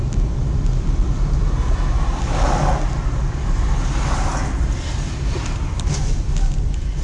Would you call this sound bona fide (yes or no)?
yes